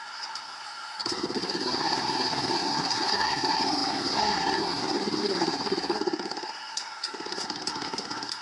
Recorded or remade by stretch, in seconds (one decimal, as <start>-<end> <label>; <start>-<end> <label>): 0.0-8.4 remade